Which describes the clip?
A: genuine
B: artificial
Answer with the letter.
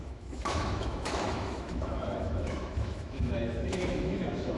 B